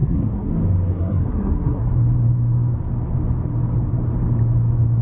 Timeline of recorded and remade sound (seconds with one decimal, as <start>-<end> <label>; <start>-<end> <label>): 0.0-0.5 remade; 0.5-0.9 recorded; 0.9-1.9 remade; 1.9-5.0 recorded